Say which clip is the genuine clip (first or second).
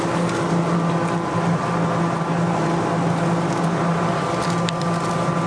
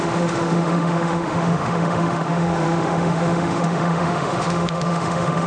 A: first